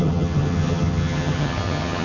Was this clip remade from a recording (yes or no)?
yes